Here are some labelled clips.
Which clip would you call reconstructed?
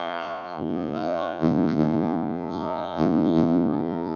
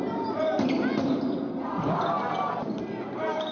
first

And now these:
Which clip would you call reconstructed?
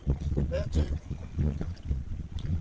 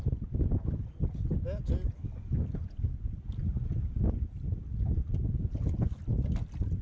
first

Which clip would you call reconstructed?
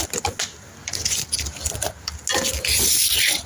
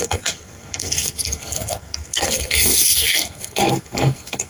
second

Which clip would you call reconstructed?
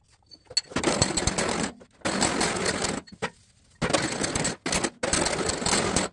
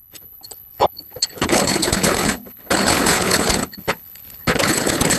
second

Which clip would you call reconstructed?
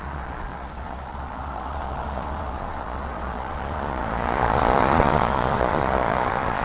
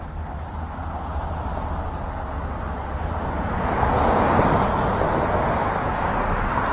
first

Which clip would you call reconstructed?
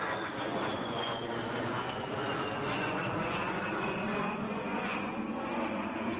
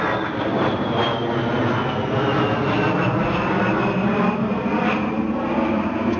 first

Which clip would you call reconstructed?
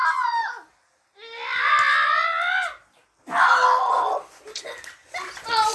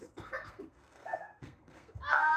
second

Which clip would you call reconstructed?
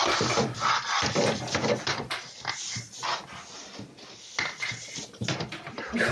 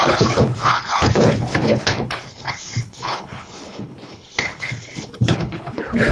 second